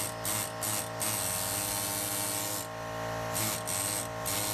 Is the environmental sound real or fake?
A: real